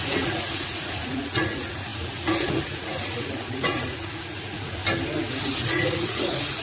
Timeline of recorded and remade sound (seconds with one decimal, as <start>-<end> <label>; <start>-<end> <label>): 0.0-4.8 remade; 4.8-5.4 recorded; 5.4-6.6 remade